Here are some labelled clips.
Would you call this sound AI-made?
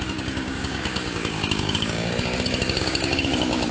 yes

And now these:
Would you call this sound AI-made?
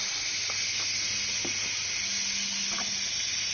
no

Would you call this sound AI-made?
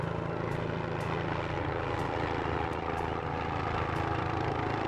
no